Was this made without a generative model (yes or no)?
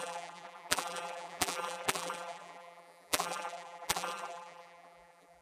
no